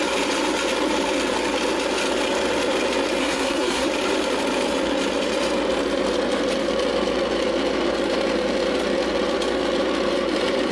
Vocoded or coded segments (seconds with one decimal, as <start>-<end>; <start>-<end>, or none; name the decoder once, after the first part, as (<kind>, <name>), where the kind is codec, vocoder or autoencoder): 3.2-3.9 (codec, SNAC)